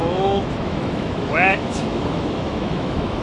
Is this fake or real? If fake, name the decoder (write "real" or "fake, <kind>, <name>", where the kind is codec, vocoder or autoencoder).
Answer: fake, autoencoder, DAC-VAE